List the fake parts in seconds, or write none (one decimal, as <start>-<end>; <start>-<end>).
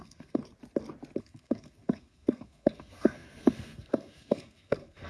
0.0-0.4; 1.2-5.1